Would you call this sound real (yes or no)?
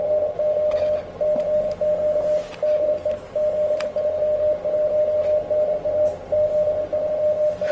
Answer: yes